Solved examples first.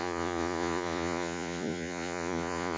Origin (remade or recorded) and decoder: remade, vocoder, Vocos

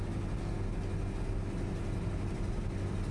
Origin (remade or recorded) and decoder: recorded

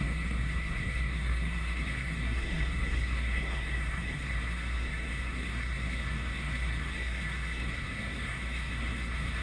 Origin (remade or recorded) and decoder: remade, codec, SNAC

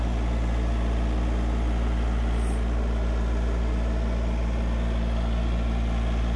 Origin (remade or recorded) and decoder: recorded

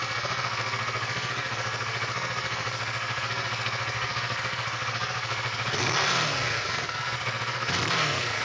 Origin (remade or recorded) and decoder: remade, codec, SNAC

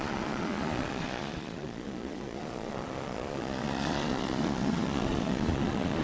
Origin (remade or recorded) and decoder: remade, vocoder, Vocos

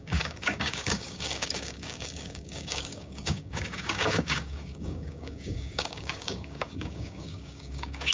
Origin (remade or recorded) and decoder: remade, codec, DAC